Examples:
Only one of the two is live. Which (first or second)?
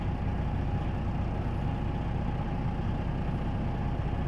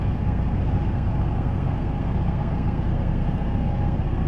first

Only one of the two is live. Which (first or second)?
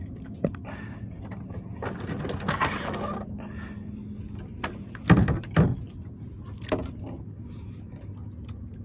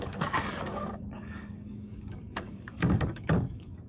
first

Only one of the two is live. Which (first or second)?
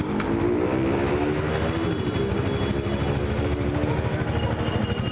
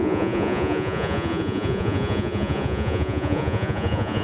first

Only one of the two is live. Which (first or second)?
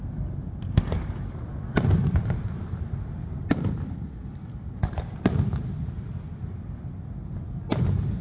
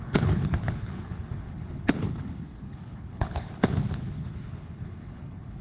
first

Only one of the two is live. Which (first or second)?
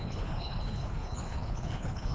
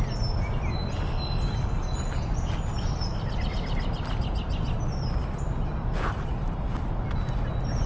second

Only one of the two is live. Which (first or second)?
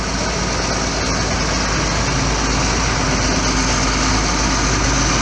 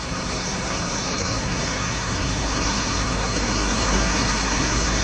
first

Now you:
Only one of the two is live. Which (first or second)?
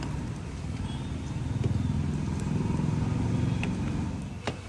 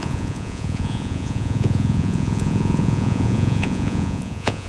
first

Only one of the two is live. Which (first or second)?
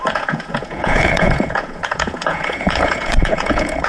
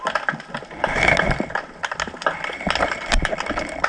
second